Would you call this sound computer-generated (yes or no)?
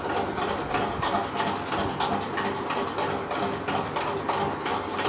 no